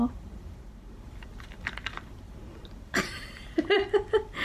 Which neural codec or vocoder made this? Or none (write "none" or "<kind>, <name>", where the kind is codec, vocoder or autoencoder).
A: vocoder, BigVGAN v2